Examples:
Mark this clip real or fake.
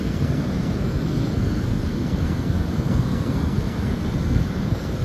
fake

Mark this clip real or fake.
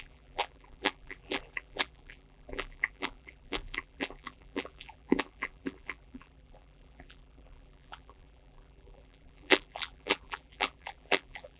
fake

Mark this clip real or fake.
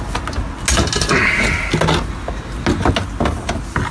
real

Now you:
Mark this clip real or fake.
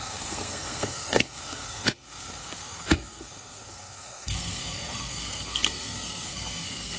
fake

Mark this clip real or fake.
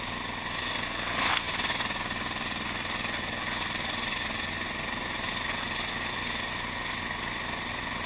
real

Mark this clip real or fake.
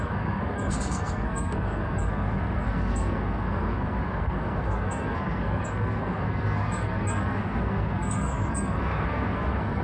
fake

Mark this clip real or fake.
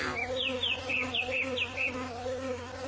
fake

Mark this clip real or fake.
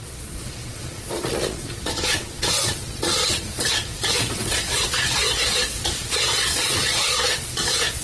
fake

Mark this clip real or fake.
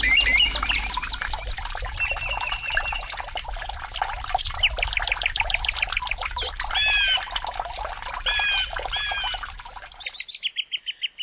real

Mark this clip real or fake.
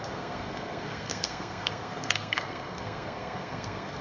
fake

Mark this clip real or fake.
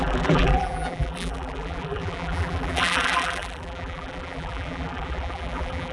fake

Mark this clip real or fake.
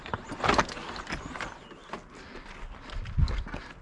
real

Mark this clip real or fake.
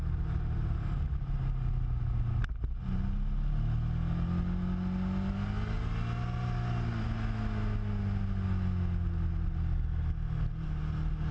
real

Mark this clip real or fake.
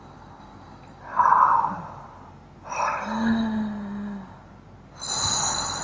real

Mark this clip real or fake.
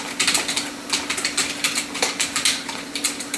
real